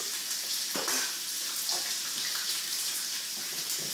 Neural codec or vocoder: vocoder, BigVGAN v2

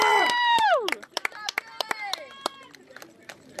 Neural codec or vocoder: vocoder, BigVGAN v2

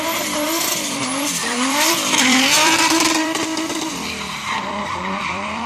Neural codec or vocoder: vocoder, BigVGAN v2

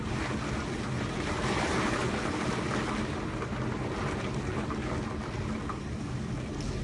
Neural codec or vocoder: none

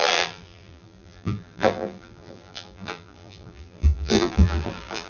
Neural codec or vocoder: vocoder, BigVGAN v2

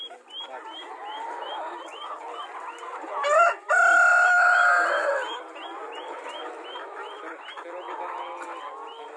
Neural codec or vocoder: none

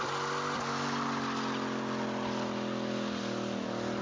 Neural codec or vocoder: none